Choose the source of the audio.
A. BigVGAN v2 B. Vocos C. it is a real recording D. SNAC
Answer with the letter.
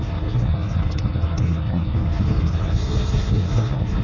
D